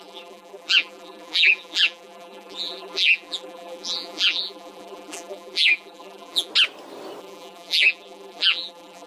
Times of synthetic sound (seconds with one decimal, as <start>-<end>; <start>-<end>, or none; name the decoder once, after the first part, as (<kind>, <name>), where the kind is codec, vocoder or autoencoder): 0.0-6.5 (vocoder, BigVGAN v2); 7.2-9.1